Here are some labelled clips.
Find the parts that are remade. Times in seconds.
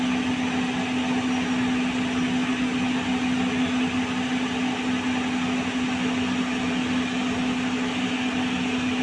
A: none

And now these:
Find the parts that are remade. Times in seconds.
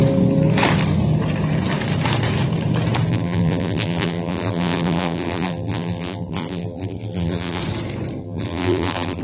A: 3.1-7.6 (vocoder, BigVGAN v2); 8.2-9.2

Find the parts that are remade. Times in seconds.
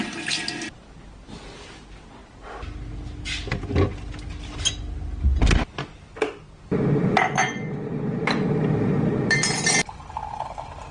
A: none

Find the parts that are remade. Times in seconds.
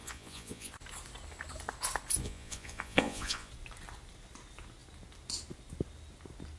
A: 0.0-0.7 (vocoder, Vocos); 2.2-3.5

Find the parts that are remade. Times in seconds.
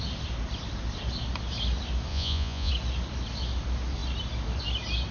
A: 2.1-2.7 (vocoder, Vocos)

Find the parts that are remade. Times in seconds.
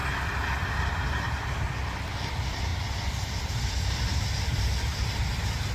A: none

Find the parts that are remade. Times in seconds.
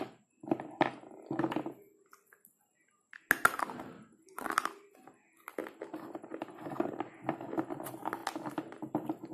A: none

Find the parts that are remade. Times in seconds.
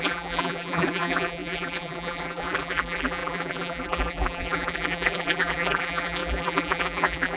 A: 0.0-7.4 (vocoder, BigVGAN v2)